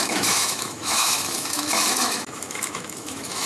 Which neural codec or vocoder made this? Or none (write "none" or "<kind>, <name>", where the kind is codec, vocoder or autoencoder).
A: autoencoder, DAC-VAE